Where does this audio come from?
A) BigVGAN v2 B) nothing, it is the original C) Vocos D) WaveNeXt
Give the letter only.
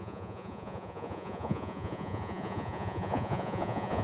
C